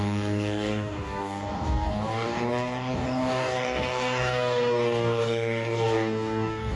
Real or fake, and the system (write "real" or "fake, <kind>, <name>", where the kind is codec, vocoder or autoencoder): fake, codec, DAC